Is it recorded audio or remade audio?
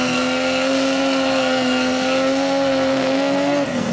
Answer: remade